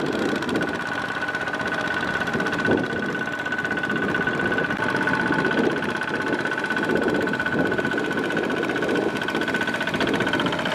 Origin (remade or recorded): recorded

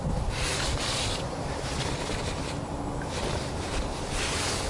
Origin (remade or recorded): recorded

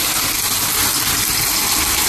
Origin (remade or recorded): recorded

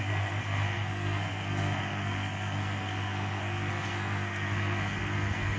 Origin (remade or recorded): remade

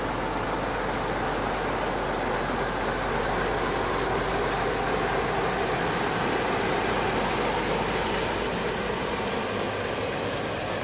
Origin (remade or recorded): recorded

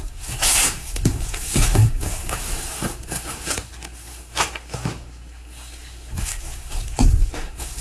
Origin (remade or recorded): remade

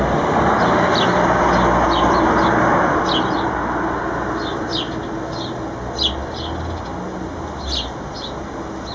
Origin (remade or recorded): recorded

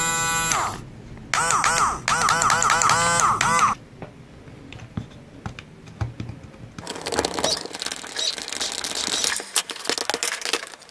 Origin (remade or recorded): recorded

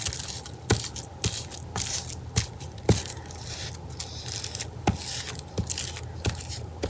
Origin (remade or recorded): recorded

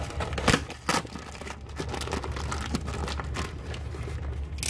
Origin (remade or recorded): recorded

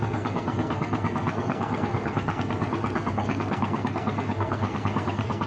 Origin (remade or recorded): remade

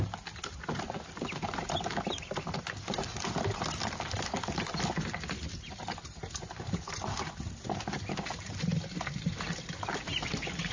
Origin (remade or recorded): recorded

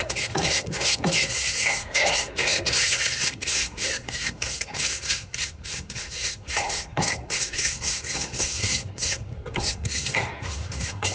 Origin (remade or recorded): remade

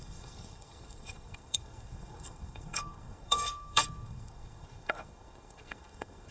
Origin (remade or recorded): remade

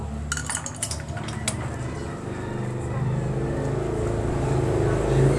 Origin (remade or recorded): recorded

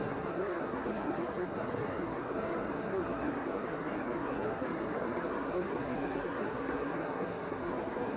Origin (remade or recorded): remade